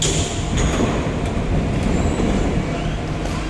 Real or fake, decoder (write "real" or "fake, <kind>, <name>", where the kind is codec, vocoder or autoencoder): real